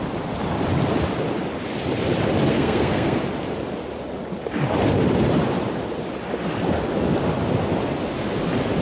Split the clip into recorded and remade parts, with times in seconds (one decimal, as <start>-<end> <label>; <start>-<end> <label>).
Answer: 0.0-2.5 recorded; 2.5-3.2 remade; 3.2-8.8 recorded